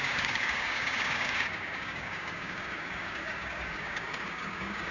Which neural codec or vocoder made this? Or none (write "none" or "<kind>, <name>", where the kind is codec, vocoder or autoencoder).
codec, DAC